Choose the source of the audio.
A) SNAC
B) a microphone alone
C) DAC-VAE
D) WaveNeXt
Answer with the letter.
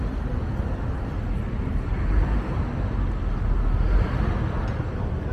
B